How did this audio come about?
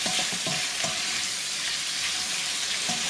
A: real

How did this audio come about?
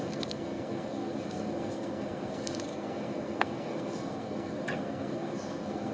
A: fake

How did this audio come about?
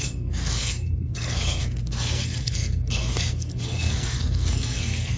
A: fake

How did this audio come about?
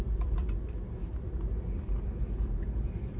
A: fake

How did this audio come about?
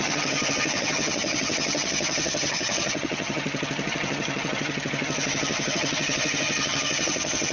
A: fake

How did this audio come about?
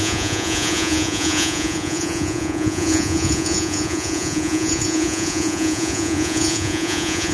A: fake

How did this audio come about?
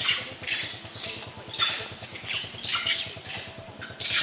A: real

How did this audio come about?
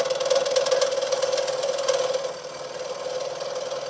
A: real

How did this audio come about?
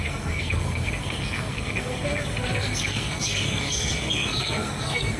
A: fake